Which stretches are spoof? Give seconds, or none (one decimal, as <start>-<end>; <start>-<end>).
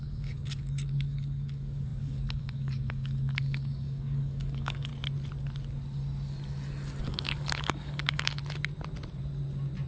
0.0-4.9; 7.0-8.4